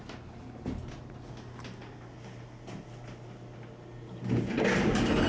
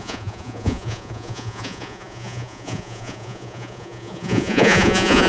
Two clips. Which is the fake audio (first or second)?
second